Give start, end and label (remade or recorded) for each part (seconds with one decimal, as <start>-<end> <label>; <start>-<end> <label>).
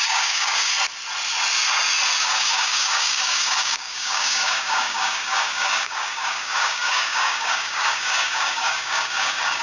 0.0-0.7 remade; 0.7-2.2 recorded; 2.2-9.6 remade